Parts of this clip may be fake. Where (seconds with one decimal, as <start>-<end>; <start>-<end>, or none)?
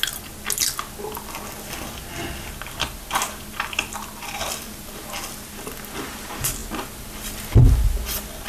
none